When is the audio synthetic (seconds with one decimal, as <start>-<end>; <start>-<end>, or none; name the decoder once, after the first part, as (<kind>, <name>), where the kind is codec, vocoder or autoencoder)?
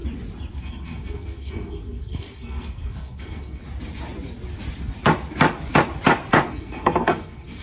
0.6-3.6 (codec, SNAC); 6.5-7.6